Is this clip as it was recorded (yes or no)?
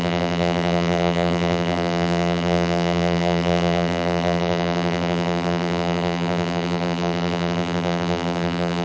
no